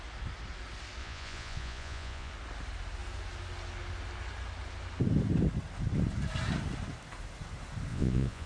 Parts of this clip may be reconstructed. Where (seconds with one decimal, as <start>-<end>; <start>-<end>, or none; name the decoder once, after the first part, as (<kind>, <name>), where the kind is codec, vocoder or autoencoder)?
1.0-2.3 (vocoder, Vocos); 7.9-8.5